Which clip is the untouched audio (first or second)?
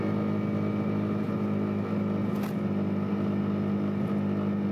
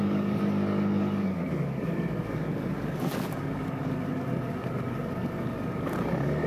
first